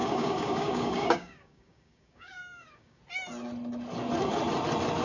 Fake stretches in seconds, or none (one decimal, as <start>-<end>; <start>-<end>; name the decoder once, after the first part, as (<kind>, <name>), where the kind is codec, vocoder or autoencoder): 0.0-3.0 (codec, DAC)